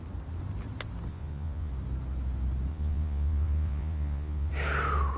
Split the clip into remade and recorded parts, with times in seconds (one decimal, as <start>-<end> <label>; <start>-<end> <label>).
0.0-1.1 recorded; 1.1-1.7 remade; 1.7-2.7 recorded; 2.7-4.5 remade; 4.5-5.2 recorded